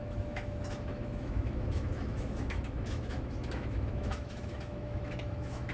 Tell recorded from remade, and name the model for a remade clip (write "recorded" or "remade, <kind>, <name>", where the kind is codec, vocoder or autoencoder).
remade, autoencoder, DAC-VAE